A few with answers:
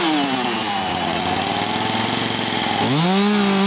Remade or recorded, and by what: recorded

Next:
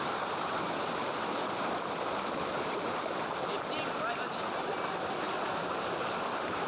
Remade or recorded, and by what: recorded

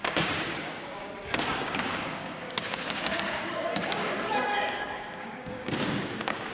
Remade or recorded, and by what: remade, codec, DAC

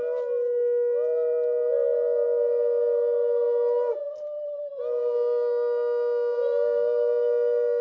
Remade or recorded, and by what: recorded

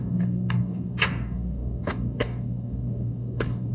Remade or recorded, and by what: remade, codec, DAC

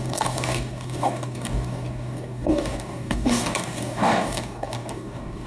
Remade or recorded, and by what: remade, codec, DAC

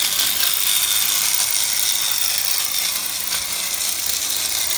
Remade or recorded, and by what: recorded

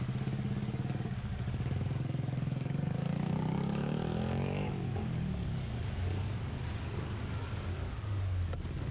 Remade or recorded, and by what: remade, codec, DAC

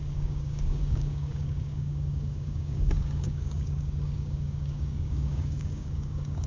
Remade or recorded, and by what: remade, codec, DAC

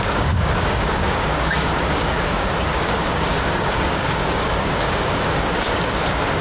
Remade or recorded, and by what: remade, codec, DAC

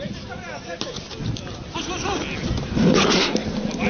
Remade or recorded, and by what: recorded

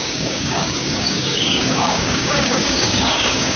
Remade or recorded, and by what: remade, codec, DAC